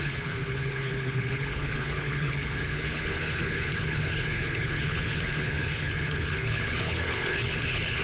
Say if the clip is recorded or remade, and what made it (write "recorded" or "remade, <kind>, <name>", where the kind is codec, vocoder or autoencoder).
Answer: remade, codec, HILCodec